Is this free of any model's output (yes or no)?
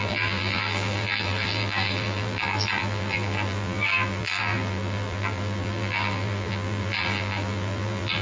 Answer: no